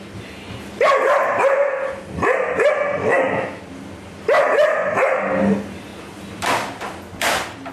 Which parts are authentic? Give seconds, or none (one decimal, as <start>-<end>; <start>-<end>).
0.0-3.0; 3.6-7.7